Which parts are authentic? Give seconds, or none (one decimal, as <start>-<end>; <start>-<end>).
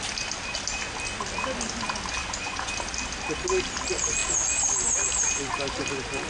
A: 0.0-2.2; 2.7-6.3